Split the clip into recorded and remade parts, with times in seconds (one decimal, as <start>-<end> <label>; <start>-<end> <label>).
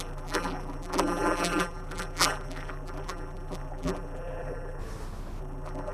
0.0-4.8 remade; 4.8-5.4 recorded; 5.4-5.9 remade